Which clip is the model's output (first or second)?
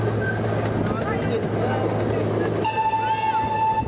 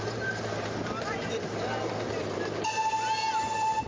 second